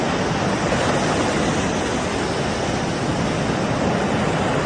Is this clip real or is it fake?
real